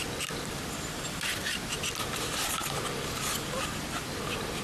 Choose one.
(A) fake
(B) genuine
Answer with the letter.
B